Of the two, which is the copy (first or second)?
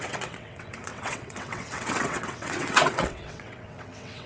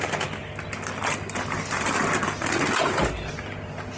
first